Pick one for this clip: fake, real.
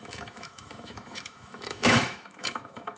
fake